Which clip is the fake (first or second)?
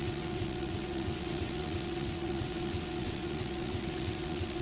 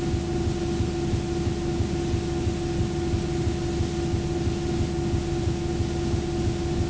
first